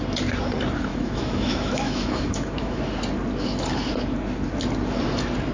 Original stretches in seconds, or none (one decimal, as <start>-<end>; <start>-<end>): 0.0-0.9; 2.8-5.5